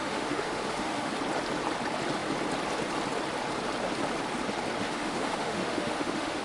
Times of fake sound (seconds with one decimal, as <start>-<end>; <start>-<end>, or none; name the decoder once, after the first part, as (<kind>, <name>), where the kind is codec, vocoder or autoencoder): 0.0-1.1 (autoencoder, DAC-VAE); 4.8-6.4